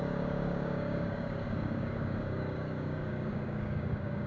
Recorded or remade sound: remade